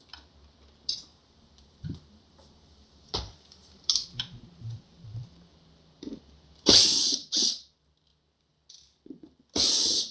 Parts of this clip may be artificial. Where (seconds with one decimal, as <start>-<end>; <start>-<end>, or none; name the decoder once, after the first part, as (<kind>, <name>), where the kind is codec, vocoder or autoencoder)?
1.1-5.5 (vocoder, BigVGAN v2)